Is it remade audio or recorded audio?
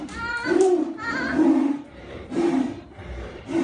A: remade